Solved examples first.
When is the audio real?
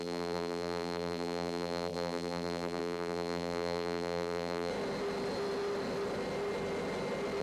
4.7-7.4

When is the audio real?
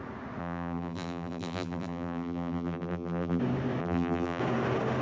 0.0-0.4; 3.4-3.8; 4.4-5.0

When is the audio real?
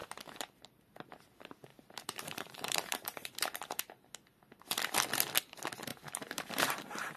0.8-1.7; 3.8-5.9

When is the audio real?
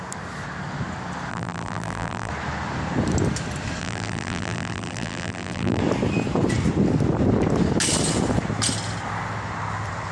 0.0-1.3; 2.3-3.8; 5.8-10.1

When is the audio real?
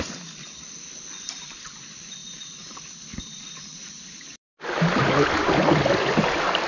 0.0-2.2; 5.4-6.7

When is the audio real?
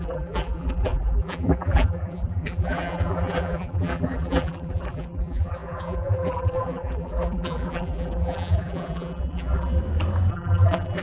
9.8-10.3